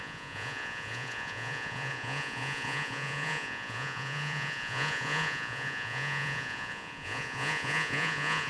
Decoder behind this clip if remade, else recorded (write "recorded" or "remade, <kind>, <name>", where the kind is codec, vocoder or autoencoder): remade, vocoder, Vocos